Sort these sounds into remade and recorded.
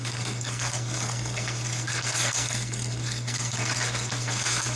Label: remade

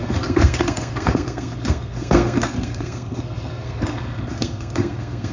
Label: remade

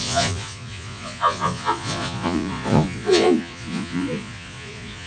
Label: remade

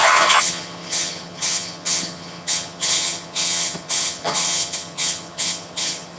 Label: remade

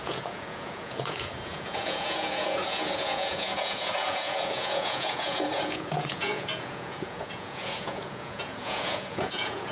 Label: remade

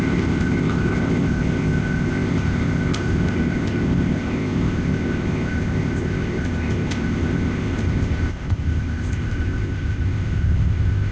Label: remade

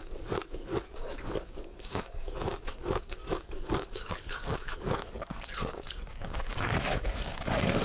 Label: remade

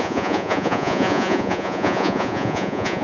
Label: remade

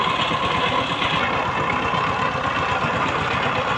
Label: recorded